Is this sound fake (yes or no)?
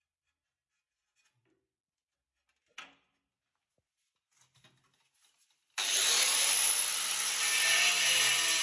no